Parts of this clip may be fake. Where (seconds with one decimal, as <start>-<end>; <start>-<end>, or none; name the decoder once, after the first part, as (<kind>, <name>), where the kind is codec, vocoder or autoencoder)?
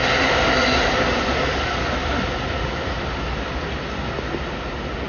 none